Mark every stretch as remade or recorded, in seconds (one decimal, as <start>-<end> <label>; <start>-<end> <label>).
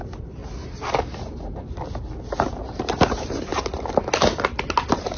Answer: 0.0-0.4 remade; 0.4-2.5 recorded; 2.5-3.5 remade; 3.5-4.8 recorded; 4.8-5.2 remade